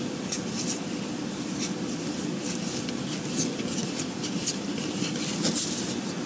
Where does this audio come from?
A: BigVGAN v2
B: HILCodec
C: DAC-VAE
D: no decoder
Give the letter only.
A